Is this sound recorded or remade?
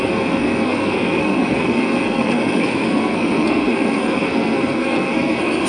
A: remade